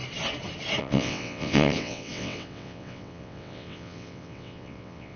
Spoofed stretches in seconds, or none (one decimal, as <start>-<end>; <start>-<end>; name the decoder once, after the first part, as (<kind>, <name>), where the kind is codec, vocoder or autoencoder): 0.8-5.2 (vocoder, WaveNeXt)